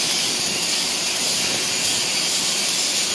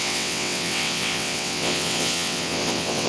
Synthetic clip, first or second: second